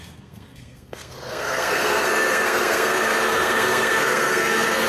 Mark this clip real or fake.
fake